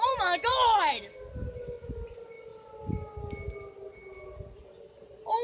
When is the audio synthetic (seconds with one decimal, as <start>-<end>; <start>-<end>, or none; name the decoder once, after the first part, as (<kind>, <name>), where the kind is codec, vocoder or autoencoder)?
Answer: none